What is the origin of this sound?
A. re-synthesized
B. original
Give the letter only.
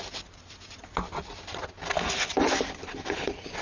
B